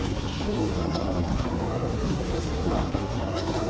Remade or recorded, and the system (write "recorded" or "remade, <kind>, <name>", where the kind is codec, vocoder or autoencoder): remade, codec, SNAC